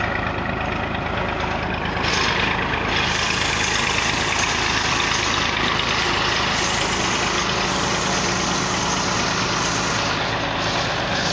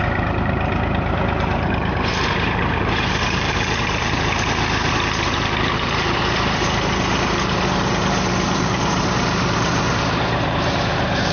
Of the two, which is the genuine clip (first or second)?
first